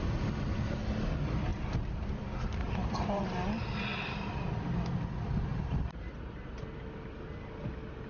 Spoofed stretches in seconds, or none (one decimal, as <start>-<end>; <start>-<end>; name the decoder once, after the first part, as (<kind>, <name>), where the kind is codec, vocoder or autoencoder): 1.5-3.2 (vocoder, BigVGAN v2); 3.9-4.5; 5.5-7.4